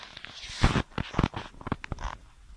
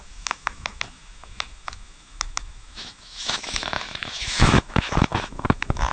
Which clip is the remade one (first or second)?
second